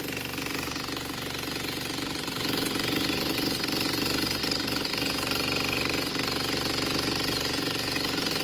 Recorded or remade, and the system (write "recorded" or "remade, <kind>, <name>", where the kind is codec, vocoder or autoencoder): recorded